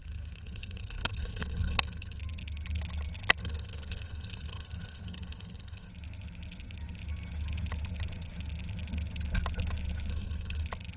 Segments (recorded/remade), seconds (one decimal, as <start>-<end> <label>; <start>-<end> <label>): 0.0-2.2 remade; 2.2-3.4 recorded; 3.4-5.9 remade; 5.9-10.1 recorded; 10.1-10.6 remade; 10.6-11.0 recorded